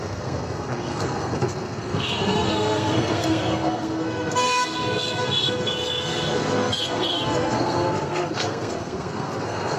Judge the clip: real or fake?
fake